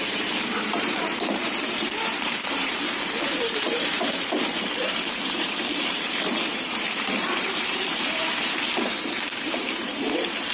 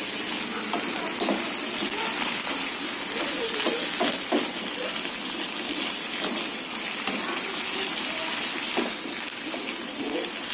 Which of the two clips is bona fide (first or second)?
second